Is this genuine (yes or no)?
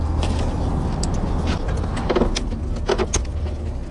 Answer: yes